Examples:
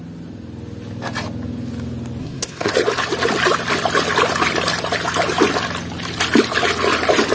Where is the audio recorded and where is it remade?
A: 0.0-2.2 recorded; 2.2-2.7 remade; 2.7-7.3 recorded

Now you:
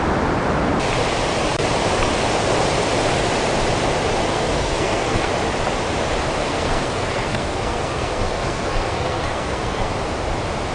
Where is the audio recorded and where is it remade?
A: 0.0-4.3 recorded; 4.3-5.3 remade; 5.3-6.4 recorded; 6.4-9.9 remade; 9.9-10.7 recorded

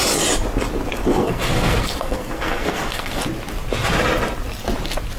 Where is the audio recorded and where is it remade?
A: 0.0-1.0 recorded; 1.0-3.2 remade; 3.2-5.2 recorded

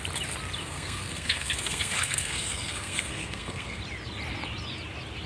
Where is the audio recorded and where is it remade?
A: 0.0-0.6 recorded; 0.6-3.8 remade; 3.8-5.3 recorded